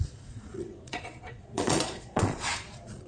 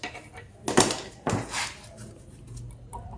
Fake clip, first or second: first